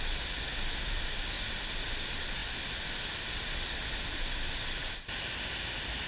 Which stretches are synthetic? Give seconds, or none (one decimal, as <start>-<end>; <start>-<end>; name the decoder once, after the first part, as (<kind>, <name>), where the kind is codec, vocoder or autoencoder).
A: none